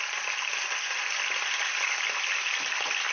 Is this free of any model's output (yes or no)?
yes